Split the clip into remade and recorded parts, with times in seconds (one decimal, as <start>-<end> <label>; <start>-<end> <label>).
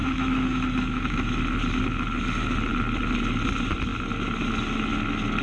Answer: 0.0-1.4 remade; 1.4-5.4 recorded